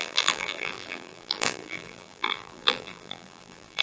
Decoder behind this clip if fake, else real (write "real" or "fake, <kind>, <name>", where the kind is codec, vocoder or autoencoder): fake, vocoder, BigVGAN v2